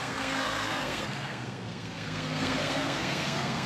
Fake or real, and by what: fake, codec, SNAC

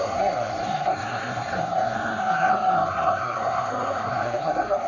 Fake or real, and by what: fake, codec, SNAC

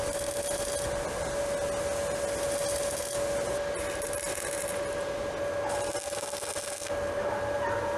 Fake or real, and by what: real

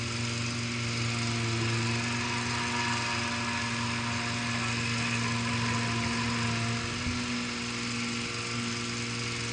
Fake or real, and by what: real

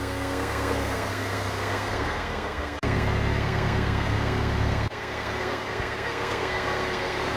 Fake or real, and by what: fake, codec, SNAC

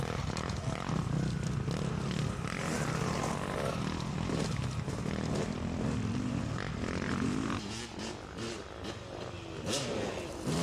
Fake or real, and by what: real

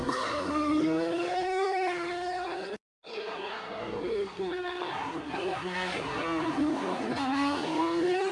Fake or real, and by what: fake, codec, SNAC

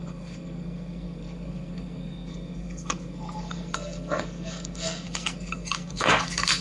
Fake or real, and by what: fake, codec, SNAC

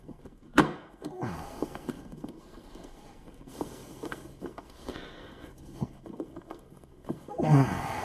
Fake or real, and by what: fake, codec, SNAC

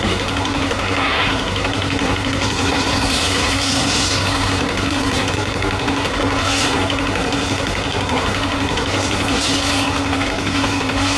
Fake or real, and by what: fake, codec, SNAC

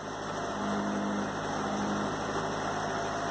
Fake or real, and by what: real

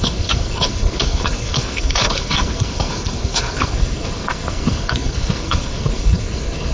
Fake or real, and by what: fake, codec, SNAC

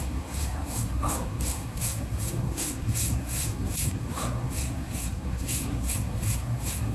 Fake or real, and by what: fake, codec, SNAC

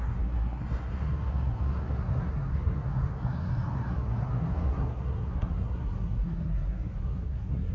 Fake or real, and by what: fake, codec, SNAC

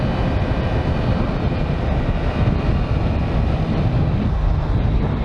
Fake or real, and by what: real